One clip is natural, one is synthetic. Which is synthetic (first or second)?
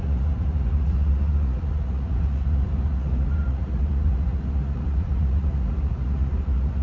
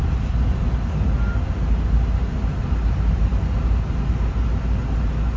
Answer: first